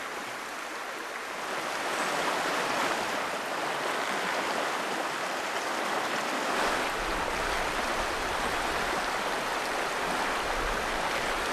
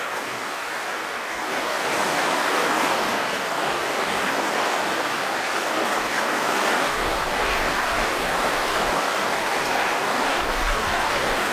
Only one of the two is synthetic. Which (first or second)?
second